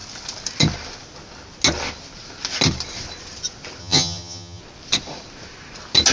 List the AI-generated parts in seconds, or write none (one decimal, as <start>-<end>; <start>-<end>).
3.8-4.6